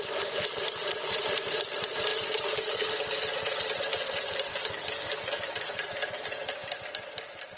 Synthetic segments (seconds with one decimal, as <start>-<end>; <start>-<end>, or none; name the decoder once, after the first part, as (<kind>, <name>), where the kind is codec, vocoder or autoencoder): 2.1-2.9 (codec, DAC); 4.5-5.3

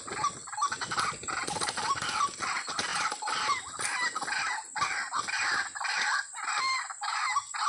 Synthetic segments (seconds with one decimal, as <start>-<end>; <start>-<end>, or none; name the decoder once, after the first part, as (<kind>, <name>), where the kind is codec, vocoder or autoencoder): none

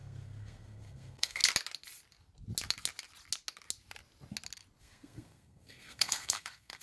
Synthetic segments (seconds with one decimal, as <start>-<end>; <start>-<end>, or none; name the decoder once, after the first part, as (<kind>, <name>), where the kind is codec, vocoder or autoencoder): 0.0-1.4 (codec, SNAC); 4.8-6.8

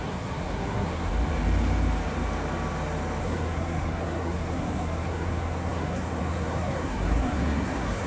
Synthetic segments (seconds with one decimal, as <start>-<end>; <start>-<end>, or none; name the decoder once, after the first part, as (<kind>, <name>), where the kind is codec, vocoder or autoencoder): 0.0-1.1 (codec, SNAC); 3.2-8.1

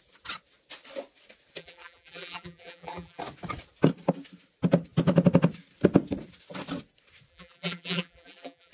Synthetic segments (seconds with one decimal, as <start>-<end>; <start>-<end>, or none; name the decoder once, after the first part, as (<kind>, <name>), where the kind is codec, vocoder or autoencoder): 1.6-3.2 (vocoder, BigVGAN v2); 7.3-8.7